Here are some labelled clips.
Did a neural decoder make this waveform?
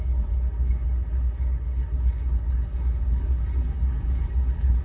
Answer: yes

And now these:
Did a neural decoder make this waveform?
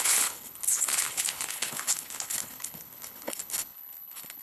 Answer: yes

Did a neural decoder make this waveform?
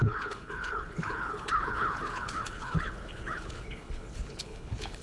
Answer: yes